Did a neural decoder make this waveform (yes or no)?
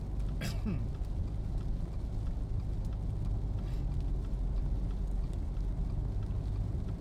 no